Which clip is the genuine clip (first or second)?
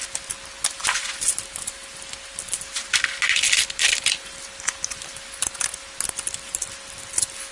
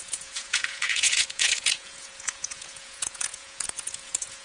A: first